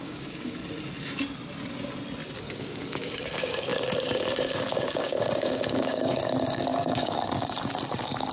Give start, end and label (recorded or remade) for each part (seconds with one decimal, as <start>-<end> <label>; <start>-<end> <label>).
0.0-0.6 remade; 0.6-2.4 recorded; 2.4-8.3 remade